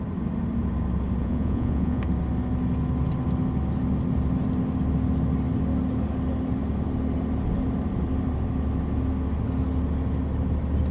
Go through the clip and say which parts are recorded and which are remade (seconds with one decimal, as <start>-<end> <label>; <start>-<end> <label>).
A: 0.0-1.2 recorded; 1.2-2.0 remade; 2.0-10.9 recorded

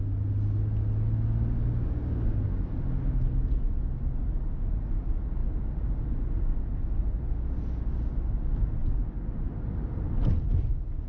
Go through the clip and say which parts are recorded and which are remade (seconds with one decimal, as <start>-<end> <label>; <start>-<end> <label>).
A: 0.0-11.1 recorded

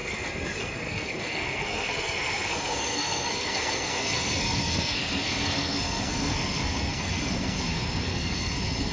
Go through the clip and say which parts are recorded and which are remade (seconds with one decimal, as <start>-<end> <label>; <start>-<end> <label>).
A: 0.0-8.9 remade

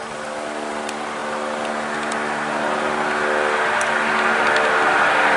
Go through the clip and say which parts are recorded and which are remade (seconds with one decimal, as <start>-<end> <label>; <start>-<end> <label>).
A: 0.0-5.4 recorded

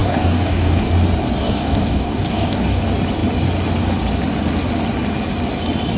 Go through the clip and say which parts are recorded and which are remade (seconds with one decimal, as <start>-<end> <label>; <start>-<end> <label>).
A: 0.0-0.9 remade; 0.9-1.4 recorded; 1.4-2.8 remade; 2.8-6.0 recorded

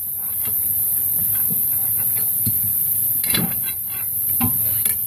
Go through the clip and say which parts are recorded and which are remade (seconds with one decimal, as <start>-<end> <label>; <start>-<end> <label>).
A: 0.0-1.0 remade; 1.0-5.1 recorded

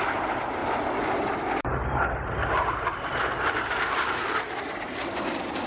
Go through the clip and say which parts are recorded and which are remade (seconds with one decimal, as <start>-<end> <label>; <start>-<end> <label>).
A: 0.0-0.6 recorded; 0.6-2.7 remade; 2.7-5.7 recorded

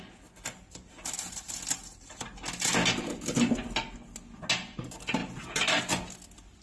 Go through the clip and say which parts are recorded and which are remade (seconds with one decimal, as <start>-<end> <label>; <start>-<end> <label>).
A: 0.0-5.2 recorded; 5.2-5.8 remade; 5.8-6.6 recorded